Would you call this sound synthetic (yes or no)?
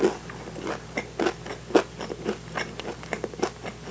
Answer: no